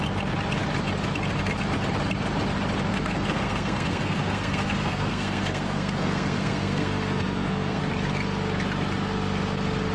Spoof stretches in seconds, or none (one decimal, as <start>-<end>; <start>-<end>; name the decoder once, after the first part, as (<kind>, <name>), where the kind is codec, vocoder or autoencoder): 2.9-7.8 (codec, SNAC)